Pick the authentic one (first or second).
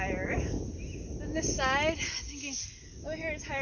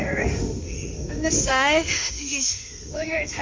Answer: first